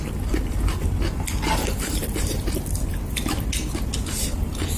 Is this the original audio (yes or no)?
yes